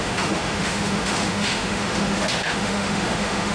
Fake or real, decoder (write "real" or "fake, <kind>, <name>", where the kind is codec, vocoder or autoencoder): fake, autoencoder, DAC-VAE